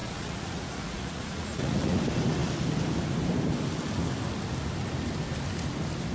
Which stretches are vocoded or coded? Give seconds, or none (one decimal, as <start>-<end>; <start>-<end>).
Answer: 0.0-2.0